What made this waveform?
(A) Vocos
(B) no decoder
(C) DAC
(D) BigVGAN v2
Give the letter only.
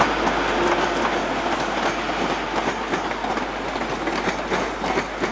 B